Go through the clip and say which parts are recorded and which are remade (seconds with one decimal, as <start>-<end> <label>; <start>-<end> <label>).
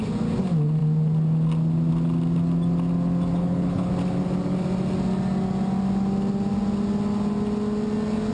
0.0-3.3 recorded; 3.3-3.9 remade; 3.9-8.3 recorded